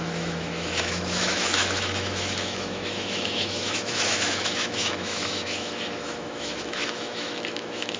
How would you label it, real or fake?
fake